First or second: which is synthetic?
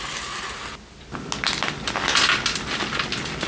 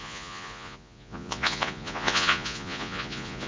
second